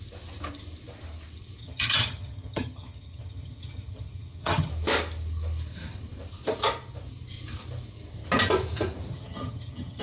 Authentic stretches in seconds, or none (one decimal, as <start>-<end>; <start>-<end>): 0.0-1.6; 4.7-9.1